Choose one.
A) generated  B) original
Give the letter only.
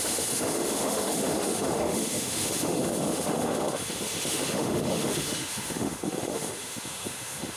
A